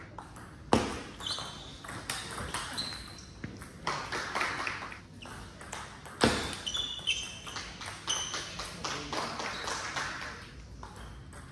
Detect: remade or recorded recorded